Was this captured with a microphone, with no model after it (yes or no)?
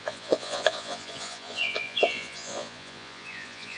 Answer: no